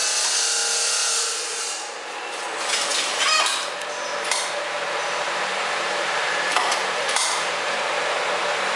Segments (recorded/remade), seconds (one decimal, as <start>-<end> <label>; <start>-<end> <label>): 0.0-5.0 recorded; 5.0-7.8 remade; 7.8-8.8 recorded